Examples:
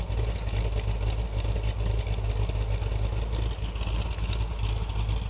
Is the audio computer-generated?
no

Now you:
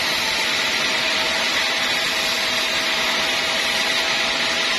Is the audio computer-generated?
no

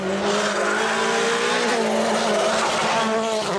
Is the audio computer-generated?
no